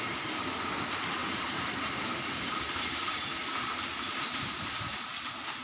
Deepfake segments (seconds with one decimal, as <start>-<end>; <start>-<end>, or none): 1.2-4.6